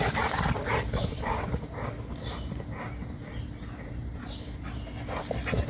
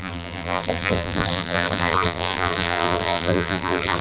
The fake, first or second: second